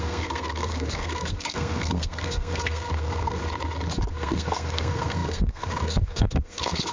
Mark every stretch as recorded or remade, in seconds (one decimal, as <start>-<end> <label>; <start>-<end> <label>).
0.0-3.4 remade; 3.4-4.1 recorded; 4.1-6.9 remade